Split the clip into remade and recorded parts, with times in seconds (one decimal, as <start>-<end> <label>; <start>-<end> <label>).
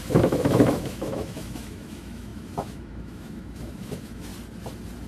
0.0-4.3 remade; 4.3-5.1 recorded